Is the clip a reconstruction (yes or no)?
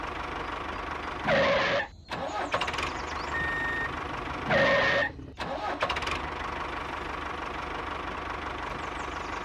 no